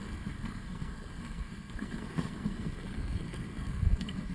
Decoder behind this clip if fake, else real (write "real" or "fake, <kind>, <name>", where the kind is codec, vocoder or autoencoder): fake, codec, SNAC